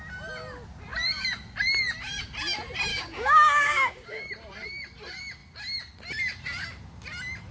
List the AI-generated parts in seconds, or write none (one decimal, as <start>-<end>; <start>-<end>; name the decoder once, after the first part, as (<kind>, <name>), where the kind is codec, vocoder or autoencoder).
2.9-4.3 (codec, DAC)